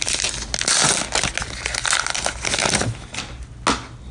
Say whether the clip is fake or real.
real